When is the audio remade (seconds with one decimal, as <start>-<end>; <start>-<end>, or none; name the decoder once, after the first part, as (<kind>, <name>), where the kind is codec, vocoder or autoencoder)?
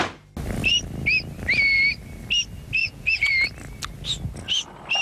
2.8-3.3 (vocoder, Vocos)